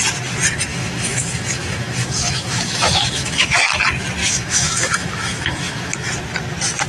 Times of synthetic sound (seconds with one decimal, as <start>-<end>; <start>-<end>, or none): 0.7-3.8; 4.2-6.1

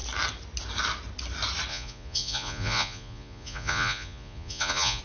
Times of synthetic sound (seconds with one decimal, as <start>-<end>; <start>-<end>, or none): 1.7-5.0

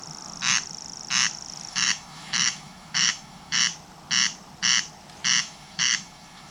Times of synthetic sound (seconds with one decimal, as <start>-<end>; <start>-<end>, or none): 1.7-3.6; 5.4-6.5

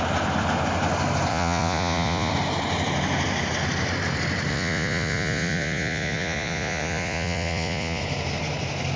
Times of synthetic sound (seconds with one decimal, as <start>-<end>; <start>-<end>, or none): 1.3-2.3; 4.5-8.0

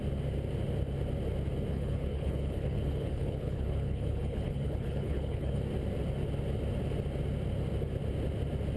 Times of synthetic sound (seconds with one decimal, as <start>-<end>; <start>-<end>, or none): 1.7-5.6